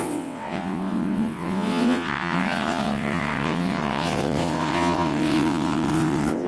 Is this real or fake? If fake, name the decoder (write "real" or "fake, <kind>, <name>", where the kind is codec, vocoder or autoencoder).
fake, vocoder, WaveNeXt